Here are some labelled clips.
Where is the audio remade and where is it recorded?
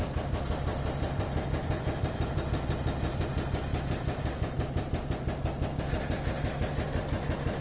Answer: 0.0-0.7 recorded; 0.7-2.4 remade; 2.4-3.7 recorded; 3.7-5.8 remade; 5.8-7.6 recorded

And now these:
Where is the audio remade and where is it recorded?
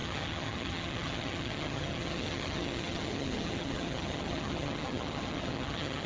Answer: 0.0-6.1 remade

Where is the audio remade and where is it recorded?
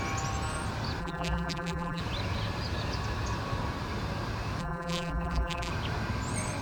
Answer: 0.0-1.0 recorded; 1.0-2.0 remade; 2.0-4.6 recorded; 4.6-5.7 remade; 5.7-6.6 recorded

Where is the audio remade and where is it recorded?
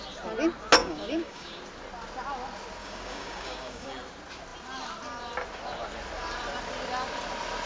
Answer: 0.0-0.8 recorded; 0.8-1.6 remade; 1.6-2.8 recorded; 2.8-3.9 remade; 3.9-7.7 recorded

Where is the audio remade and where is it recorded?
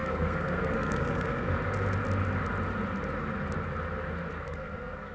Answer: 0.0-1.5 remade; 1.5-4.4 recorded; 4.4-5.1 remade